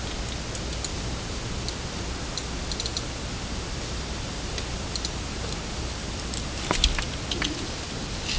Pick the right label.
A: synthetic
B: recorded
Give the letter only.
B